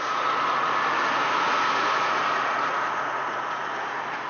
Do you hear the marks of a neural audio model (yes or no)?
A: yes